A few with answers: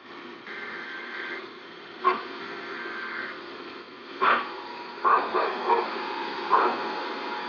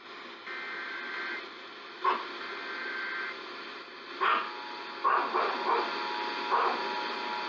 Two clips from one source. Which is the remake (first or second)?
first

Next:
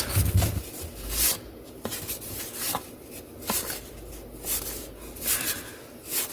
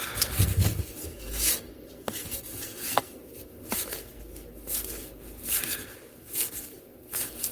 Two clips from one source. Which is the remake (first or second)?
second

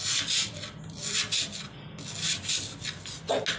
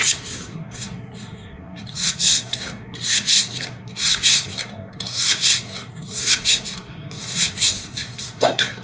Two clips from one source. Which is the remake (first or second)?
second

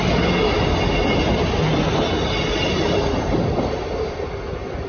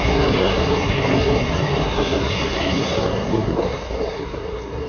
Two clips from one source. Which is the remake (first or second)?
second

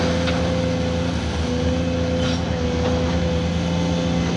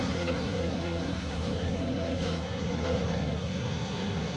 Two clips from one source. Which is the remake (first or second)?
second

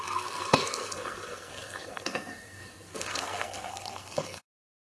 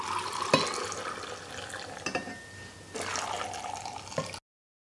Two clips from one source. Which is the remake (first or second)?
first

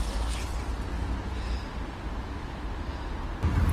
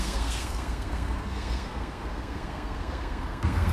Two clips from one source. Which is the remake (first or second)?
second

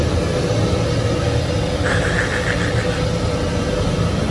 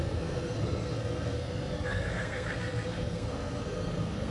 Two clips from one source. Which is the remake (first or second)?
second